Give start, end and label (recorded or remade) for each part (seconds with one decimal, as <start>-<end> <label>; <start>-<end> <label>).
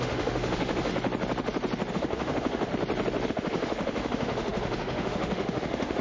0.0-0.9 remade; 0.9-1.9 recorded; 1.9-2.7 remade; 2.7-3.3 recorded; 3.3-6.0 remade